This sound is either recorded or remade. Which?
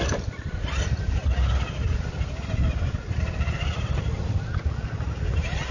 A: recorded